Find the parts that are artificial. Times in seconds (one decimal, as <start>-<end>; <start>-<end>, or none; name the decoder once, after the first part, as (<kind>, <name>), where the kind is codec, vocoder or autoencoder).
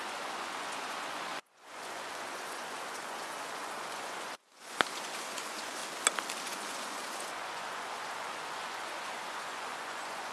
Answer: 0.0-5.8 (vocoder, Vocos); 6.4-10.3